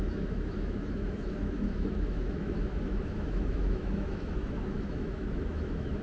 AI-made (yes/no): yes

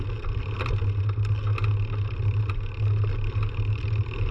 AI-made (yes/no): no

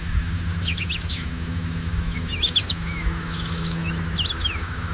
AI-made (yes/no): yes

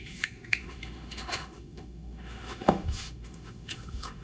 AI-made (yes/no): yes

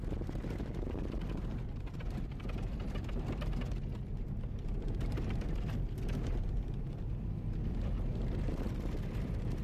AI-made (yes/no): no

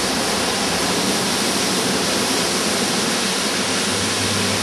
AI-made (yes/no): no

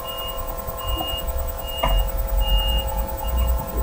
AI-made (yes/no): no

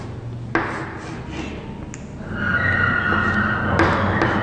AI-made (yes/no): no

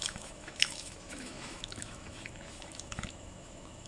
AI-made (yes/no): yes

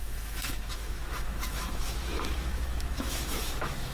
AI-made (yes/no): yes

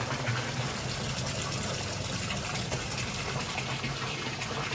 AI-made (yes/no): no